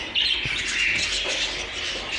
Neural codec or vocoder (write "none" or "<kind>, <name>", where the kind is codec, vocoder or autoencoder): none